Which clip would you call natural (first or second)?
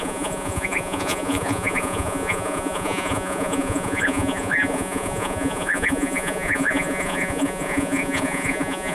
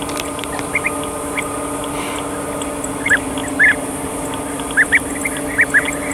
second